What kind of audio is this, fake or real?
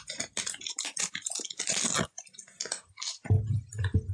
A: real